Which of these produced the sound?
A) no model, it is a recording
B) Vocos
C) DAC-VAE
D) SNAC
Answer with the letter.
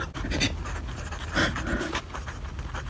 A